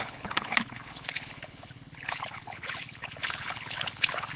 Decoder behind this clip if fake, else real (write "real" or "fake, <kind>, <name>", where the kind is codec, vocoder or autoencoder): fake, codec, HILCodec